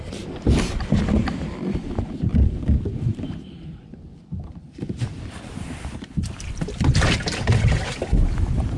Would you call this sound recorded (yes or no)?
no